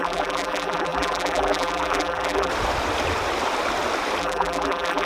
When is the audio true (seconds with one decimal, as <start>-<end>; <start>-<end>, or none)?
2.5-4.2